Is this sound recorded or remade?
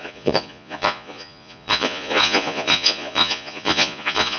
remade